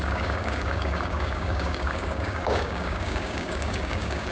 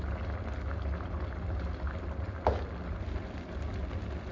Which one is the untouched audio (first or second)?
second